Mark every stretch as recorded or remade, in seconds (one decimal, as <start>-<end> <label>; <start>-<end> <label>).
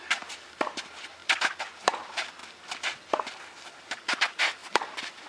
0.0-1.2 remade; 1.2-1.8 recorded; 1.8-2.4 remade; 2.4-3.8 recorded; 3.8-5.3 remade